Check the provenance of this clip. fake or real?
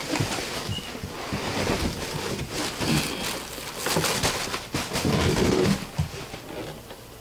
real